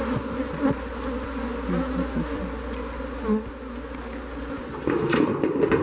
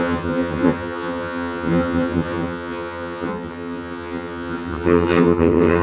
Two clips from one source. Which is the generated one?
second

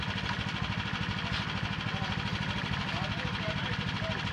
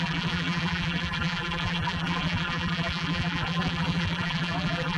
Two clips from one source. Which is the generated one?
second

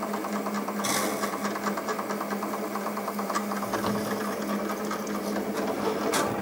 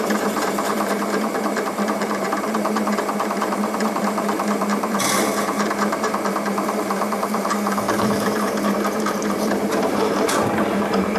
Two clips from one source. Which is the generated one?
second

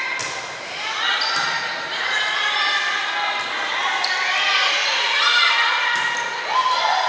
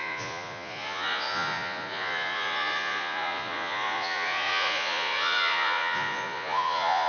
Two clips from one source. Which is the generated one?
second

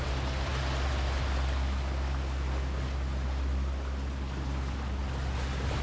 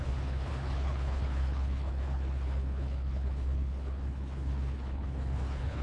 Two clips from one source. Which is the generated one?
second